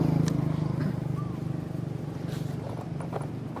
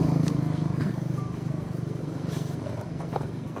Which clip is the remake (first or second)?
second